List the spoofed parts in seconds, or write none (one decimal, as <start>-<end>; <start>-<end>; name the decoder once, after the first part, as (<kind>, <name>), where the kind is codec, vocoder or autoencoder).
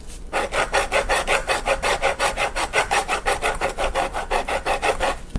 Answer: 1.4-3.9 (vocoder, BigVGAN v2)